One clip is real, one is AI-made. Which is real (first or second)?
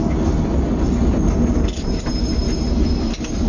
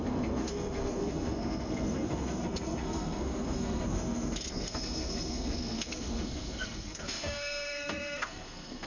first